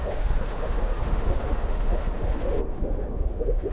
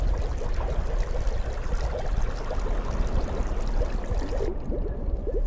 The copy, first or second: first